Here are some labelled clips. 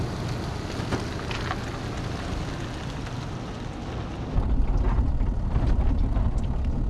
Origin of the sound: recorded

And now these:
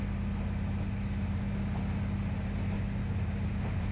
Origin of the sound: recorded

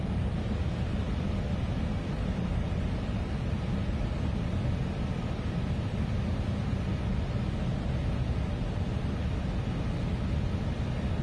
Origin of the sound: recorded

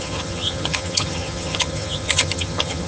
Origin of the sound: remade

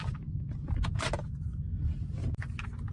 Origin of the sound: recorded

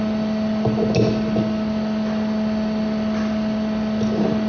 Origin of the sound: recorded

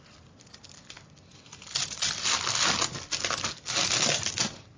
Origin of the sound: recorded